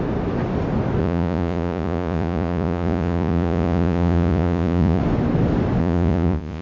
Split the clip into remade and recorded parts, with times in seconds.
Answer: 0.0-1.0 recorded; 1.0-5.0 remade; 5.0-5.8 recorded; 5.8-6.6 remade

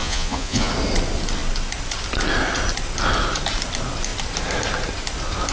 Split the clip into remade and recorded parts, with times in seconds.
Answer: 0.0-0.7 remade; 0.7-5.5 recorded

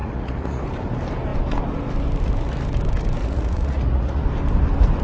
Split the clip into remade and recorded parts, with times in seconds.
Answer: 0.0-0.6 remade; 0.6-3.2 recorded; 3.2-4.2 remade; 4.2-5.0 recorded